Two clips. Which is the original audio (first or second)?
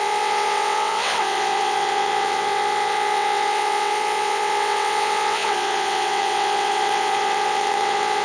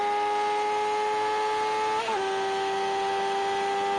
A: second